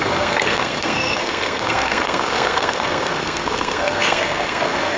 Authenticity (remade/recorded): remade